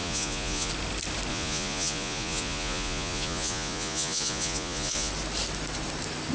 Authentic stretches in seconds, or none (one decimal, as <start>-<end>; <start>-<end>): 0.7-1.3; 5.1-6.3